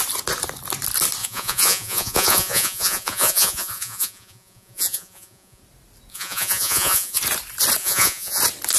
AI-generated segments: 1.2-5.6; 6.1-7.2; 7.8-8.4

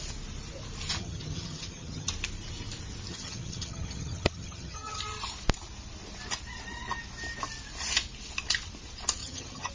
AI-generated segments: 1.0-2.1; 3.1-5.0; 9.2-9.7

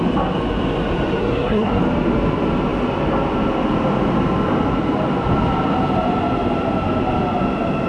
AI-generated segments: 1.2-1.8

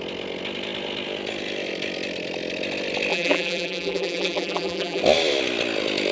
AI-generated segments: 3.1-5.0